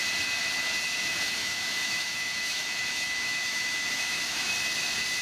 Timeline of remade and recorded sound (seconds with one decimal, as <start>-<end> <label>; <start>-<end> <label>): 0.0-1.4 recorded; 1.4-4.5 remade; 4.5-5.2 recorded